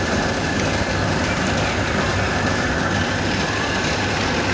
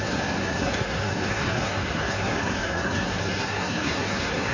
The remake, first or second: second